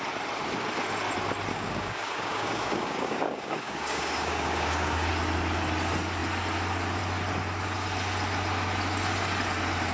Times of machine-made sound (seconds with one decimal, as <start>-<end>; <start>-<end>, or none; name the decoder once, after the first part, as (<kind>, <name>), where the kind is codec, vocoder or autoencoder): 1.5-5.1 (codec, DAC)